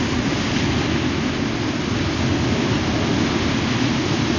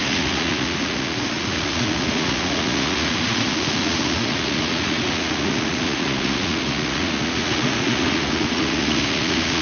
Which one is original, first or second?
first